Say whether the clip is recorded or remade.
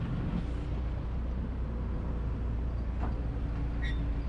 recorded